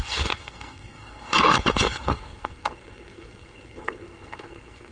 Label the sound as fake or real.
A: fake